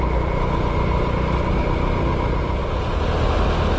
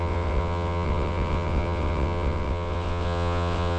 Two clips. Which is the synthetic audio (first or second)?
second